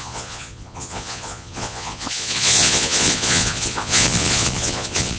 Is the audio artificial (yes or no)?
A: yes